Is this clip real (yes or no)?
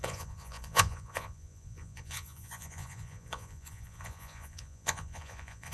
no